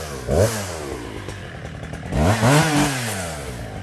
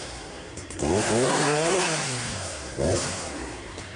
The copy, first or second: second